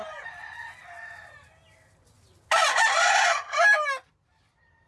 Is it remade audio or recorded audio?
recorded